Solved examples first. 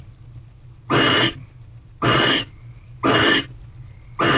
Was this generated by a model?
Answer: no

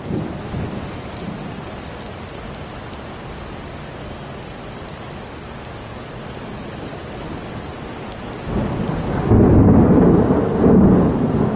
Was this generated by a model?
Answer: no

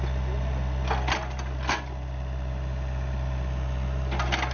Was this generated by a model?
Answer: no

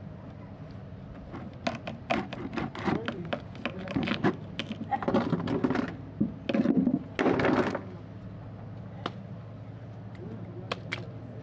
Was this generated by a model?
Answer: no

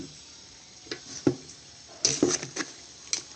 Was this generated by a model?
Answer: no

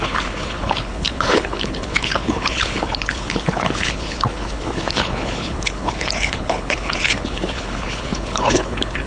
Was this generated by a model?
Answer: yes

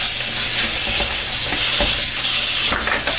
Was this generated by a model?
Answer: no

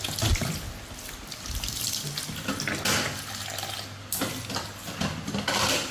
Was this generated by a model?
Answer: no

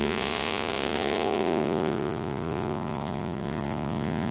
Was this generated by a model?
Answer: yes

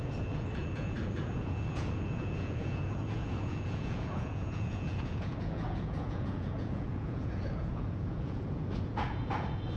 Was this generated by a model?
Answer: yes